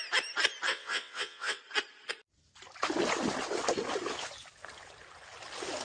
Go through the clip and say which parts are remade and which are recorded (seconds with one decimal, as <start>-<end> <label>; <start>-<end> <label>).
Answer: 0.0-0.7 recorded; 0.7-1.6 remade; 1.6-5.8 recorded